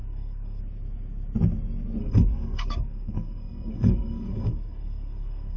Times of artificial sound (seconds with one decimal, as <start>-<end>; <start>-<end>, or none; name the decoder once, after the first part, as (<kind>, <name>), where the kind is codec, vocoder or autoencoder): 0.0-0.6 (codec, SNAC); 2.0-5.6